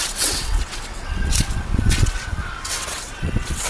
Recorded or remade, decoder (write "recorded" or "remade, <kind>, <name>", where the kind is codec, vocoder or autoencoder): remade, vocoder, WaveNeXt